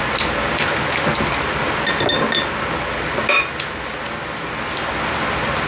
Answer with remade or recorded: recorded